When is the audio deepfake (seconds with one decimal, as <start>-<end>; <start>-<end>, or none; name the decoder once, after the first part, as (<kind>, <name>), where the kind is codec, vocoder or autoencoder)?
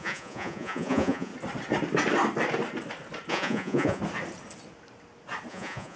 0.0-1.3 (vocoder, Vocos); 3.3-4.0; 5.5-6.0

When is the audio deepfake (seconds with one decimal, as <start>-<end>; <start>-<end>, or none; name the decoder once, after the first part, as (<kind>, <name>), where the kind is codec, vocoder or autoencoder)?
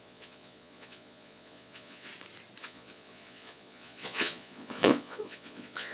0.0-2.1 (vocoder, Vocos); 2.6-5.9